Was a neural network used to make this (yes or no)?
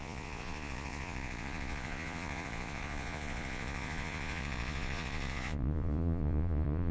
yes